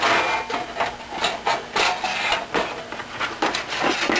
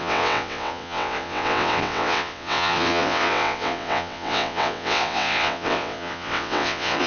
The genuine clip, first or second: first